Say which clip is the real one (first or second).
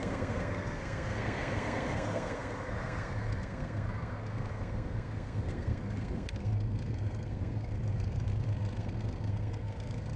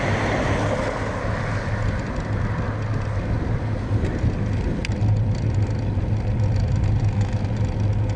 second